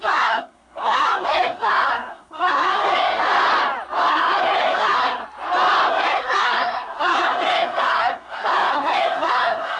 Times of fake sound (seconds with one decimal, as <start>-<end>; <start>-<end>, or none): 0.0-3.3; 4.1-5.2; 5.9-9.8